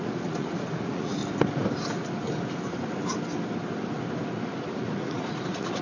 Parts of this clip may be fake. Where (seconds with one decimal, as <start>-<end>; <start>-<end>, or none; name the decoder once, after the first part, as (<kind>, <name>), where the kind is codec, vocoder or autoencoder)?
0.0-1.2 (vocoder, Vocos); 4.7-5.8